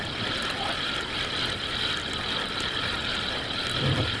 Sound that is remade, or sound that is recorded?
recorded